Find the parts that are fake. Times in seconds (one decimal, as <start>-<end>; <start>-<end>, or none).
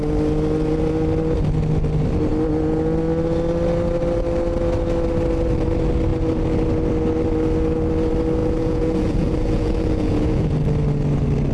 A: 8.4-10.5